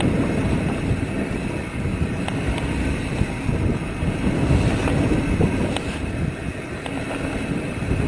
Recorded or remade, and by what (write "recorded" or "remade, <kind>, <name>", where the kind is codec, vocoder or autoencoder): recorded